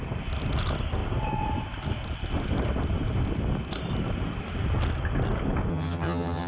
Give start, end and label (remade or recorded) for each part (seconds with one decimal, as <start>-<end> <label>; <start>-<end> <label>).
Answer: 0.0-5.7 recorded; 5.7-6.5 remade